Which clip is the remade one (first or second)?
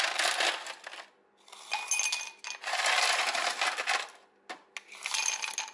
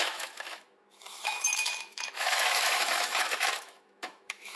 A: second